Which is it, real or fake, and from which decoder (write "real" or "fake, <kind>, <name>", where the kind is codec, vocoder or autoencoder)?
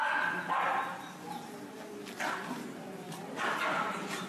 real